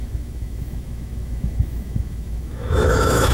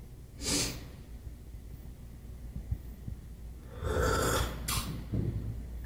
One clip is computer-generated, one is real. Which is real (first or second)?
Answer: second